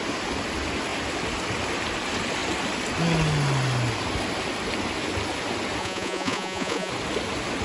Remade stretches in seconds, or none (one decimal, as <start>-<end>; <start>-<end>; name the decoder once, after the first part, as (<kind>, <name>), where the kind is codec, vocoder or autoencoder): 5.8-6.9 (vocoder, Vocos)